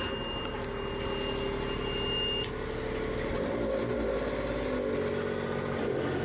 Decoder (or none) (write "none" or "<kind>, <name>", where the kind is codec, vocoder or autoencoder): none